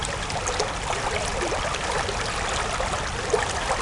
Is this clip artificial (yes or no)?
no